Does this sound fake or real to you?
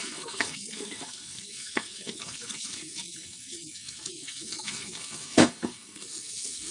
fake